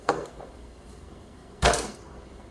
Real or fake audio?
fake